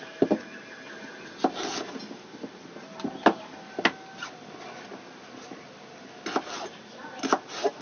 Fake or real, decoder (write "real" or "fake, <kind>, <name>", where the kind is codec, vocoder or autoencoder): real